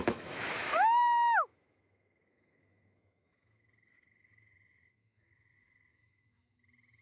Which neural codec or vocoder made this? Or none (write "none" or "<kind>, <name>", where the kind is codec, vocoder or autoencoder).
autoencoder, DAC-VAE